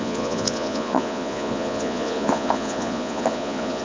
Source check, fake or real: fake